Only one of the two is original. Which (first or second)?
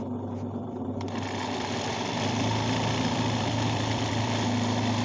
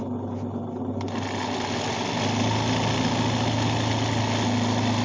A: second